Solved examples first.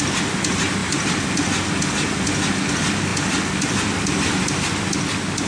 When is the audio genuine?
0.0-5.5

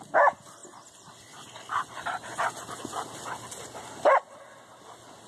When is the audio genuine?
0.0-5.3

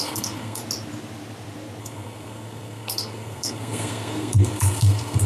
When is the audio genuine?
0.6-1.8

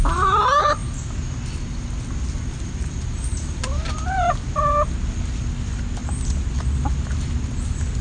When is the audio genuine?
0.0-8.0

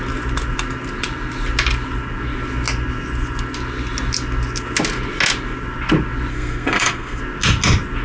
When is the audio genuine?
0.0-6.3; 7.2-8.0

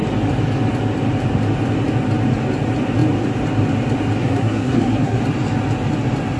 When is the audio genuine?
0.0-4.2; 5.2-6.4

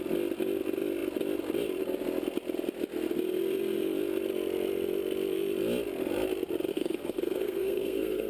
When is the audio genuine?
0.0-6.7

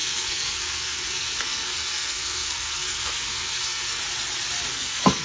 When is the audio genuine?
4.0-4.7